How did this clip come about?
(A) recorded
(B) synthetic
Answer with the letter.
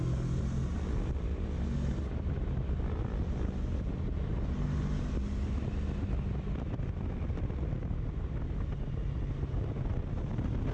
A